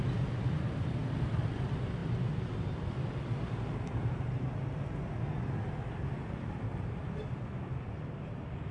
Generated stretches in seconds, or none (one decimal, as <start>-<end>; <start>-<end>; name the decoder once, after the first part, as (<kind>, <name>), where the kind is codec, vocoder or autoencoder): 0.0-6.7 (vocoder, BigVGAN v2); 7.7-8.7